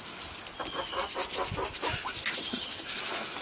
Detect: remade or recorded recorded